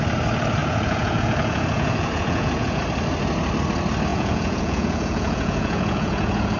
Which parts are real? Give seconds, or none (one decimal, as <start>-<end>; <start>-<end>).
0.0-0.6; 2.8-4.1